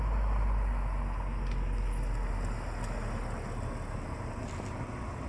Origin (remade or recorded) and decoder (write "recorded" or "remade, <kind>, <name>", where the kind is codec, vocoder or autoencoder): recorded